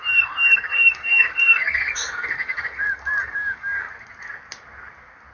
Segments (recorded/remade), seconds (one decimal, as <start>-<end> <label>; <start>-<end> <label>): 0.0-0.7 recorded; 0.7-3.9 remade; 3.9-5.3 recorded